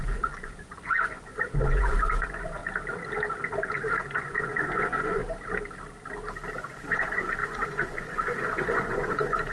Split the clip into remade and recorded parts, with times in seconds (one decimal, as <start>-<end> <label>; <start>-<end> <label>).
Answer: 0.0-2.6 remade; 2.6-4.2 recorded; 4.2-5.2 remade; 5.2-6.7 recorded; 6.7-9.5 remade